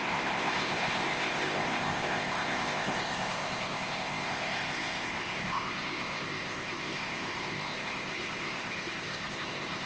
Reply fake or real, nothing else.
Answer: fake